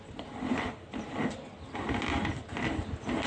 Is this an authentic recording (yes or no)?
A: yes